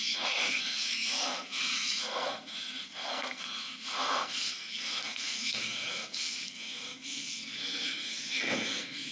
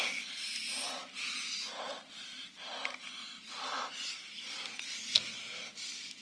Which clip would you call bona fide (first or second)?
second